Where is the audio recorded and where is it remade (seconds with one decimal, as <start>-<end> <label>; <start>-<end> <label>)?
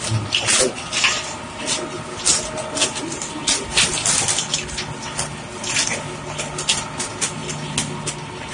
0.0-8.5 recorded